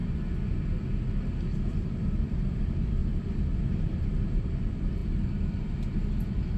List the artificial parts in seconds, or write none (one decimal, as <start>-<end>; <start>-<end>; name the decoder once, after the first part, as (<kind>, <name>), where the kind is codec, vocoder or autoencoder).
1.7-3.0 (vocoder, BigVGAN v2); 3.7-5.0